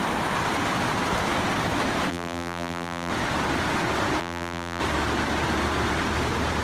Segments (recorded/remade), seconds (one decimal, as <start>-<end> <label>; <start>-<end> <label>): 0.0-2.1 recorded; 2.1-3.1 remade; 3.1-4.2 recorded; 4.2-4.8 remade; 4.8-6.6 recorded